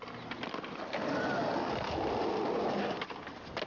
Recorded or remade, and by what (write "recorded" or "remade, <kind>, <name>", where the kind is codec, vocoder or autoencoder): recorded